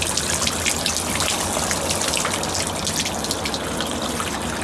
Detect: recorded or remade recorded